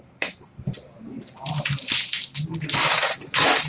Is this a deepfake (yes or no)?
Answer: yes